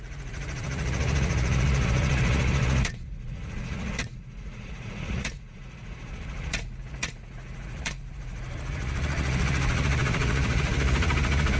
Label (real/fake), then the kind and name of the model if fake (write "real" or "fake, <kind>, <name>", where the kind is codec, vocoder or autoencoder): fake, vocoder, Vocos